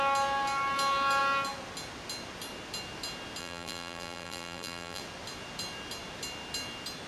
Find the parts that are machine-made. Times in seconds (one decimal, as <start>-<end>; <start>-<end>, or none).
3.4-5.0